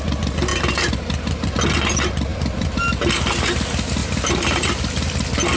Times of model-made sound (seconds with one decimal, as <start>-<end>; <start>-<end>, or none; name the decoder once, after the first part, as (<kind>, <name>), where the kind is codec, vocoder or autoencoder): 2.3-2.8 (vocoder, BigVGAN v2); 4.0-4.8